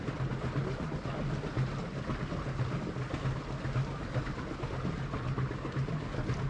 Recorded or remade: recorded